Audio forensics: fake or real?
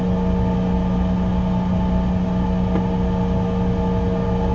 real